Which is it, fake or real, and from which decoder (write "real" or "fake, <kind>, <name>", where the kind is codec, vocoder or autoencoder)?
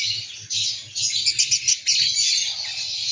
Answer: real